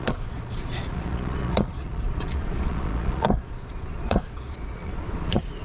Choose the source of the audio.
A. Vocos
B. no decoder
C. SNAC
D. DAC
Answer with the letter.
A